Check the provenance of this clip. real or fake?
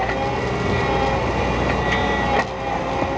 real